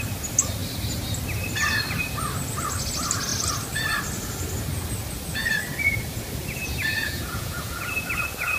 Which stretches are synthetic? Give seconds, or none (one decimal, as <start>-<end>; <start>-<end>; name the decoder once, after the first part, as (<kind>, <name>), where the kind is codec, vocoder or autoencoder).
7.0-7.9 (vocoder, Vocos)